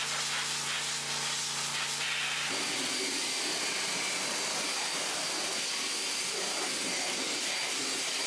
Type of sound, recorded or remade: recorded